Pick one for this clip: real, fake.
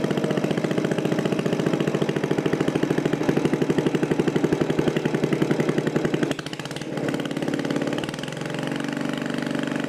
real